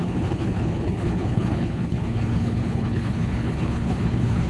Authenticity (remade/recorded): remade